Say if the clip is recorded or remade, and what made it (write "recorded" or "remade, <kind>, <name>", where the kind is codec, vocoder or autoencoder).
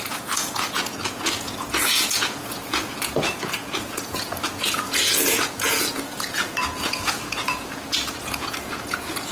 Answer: remade, vocoder, Vocos